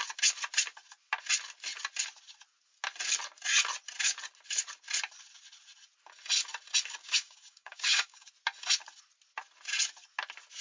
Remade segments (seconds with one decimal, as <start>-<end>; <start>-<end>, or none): 7.0-8.3